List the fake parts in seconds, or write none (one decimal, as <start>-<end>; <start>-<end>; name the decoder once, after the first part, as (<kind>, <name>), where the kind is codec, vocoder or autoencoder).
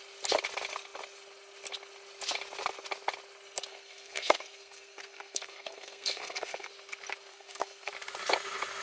3.7-6.7 (codec, SNAC); 7.3-7.9